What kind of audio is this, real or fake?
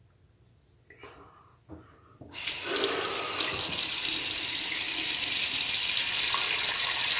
real